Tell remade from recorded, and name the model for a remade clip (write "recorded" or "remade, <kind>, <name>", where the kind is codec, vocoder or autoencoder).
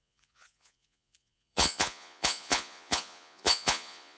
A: remade, vocoder, Vocos